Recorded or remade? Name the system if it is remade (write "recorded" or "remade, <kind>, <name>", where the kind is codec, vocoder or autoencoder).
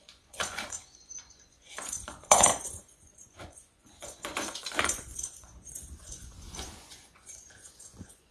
remade, vocoder, Vocos